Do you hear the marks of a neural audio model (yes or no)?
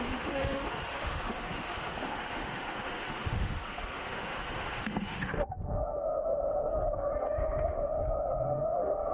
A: yes